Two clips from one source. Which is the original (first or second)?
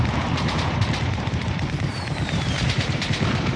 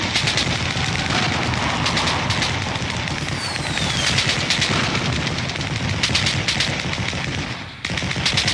second